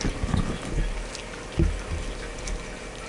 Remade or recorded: recorded